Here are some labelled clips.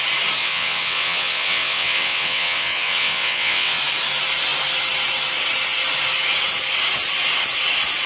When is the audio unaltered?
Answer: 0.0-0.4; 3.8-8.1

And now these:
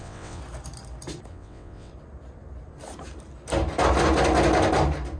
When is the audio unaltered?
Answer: 0.4-1.3; 1.9-5.2

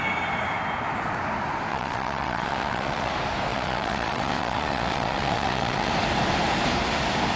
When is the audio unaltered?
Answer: 0.0-1.7; 3.1-3.5; 5.9-7.4

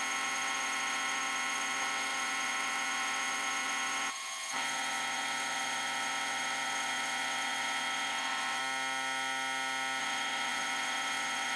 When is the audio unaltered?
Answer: 8.6-10.0

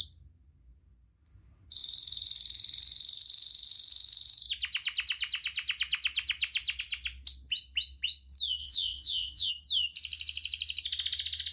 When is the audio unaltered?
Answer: 0.0-8.6; 9.5-11.5

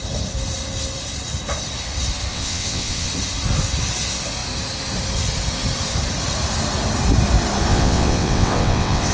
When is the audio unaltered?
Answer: 0.0-2.3; 3.1-7.7